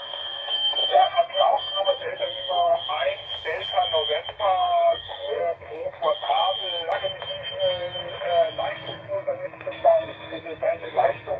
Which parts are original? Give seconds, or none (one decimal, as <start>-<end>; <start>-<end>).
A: 3.1-4.4; 6.4-8.7